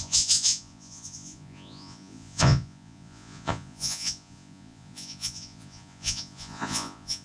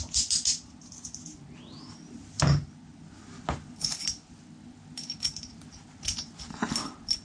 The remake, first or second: first